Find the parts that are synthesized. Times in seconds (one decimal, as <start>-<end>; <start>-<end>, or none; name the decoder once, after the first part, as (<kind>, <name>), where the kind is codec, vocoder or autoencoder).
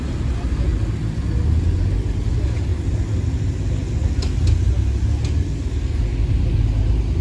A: none